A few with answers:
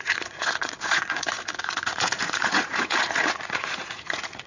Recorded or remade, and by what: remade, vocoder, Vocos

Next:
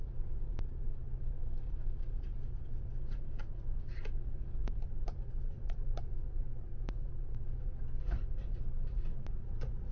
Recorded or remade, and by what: remade, vocoder, Vocos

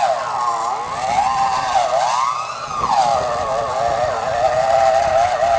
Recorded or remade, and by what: recorded